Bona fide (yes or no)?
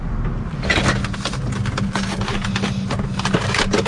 yes